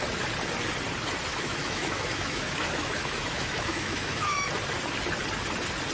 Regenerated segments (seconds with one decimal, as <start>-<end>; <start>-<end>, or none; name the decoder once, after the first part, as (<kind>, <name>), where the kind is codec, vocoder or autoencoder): 1.3-4.5 (autoencoder, DAC-VAE)